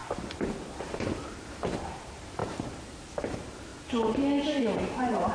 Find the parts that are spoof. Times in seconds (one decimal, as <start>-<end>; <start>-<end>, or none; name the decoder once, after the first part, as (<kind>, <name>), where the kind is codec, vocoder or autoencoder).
1.9-2.4 (vocoder, BigVGAN v2); 3.3-3.7; 4.6-5.3